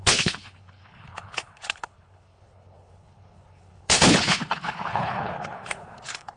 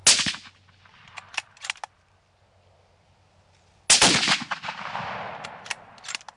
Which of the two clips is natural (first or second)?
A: second